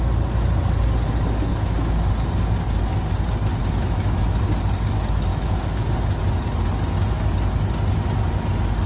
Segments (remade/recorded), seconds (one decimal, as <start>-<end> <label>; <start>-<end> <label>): 0.0-1.5 recorded; 1.5-2.1 remade; 2.1-3.6 recorded; 3.6-4.4 remade; 4.4-5.3 recorded; 5.3-5.9 remade; 5.9-8.9 recorded